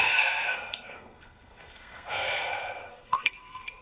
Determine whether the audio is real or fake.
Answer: fake